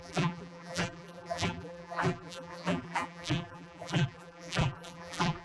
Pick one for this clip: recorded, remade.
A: remade